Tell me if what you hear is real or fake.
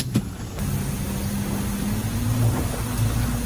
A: real